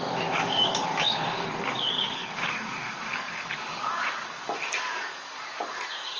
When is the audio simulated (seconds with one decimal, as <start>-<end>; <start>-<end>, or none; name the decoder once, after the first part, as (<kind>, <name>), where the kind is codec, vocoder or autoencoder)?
0.0-6.2 (codec, DAC)